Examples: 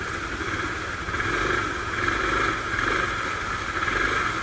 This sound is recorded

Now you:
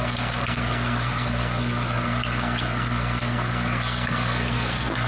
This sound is remade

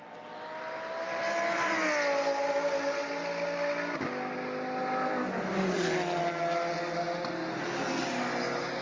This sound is recorded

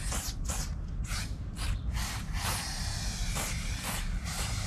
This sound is recorded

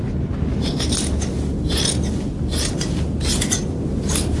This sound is recorded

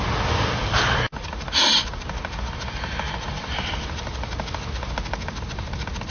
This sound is recorded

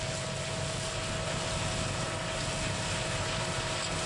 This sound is recorded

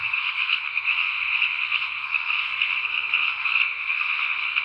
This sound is remade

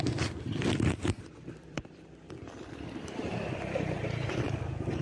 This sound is remade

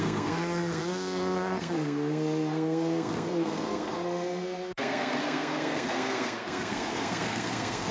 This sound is remade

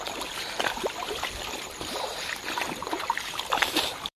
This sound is remade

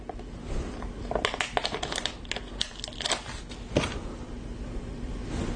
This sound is recorded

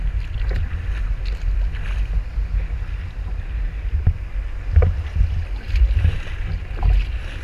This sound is recorded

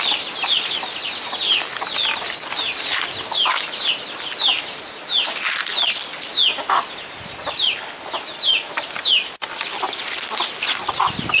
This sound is recorded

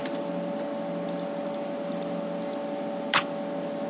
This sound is recorded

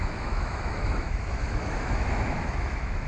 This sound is remade